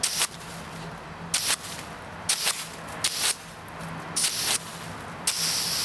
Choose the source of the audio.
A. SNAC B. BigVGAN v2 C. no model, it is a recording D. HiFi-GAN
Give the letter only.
C